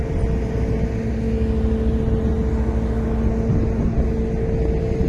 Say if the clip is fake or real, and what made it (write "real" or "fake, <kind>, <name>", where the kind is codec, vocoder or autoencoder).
real